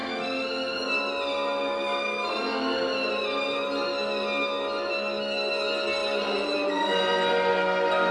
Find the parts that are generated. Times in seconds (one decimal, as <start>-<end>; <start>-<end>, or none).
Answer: 6.0-7.0